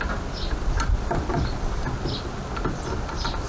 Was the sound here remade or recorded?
recorded